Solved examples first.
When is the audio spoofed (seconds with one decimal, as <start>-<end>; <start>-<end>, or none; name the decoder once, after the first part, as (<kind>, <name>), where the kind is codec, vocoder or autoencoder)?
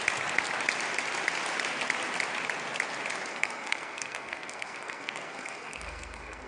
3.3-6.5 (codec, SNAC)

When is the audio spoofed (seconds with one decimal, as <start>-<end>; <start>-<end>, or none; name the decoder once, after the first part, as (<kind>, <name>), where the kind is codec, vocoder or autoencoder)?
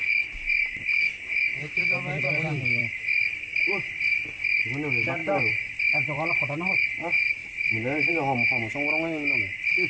1.6-4.6 (vocoder, BigVGAN v2); 5.2-6.3; 7.4-8.1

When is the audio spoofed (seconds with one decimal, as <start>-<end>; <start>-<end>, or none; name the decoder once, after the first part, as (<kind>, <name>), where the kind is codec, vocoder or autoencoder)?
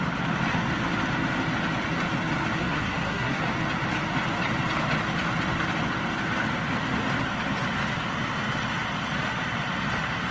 2.6-3.4 (codec, SNAC)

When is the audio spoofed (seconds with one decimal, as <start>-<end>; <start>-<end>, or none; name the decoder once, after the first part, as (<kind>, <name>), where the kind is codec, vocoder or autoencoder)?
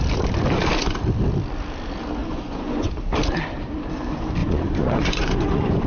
2.2-2.9 (vocoder, Vocos); 4.4-5.9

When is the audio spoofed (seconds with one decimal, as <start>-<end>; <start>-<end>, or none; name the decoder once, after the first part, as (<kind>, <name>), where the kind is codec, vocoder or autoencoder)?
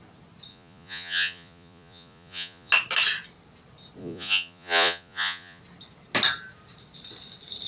0.5-2.7 (vocoder, Vocos); 4.0-5.6